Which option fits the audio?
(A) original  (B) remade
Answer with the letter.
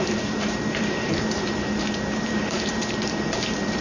B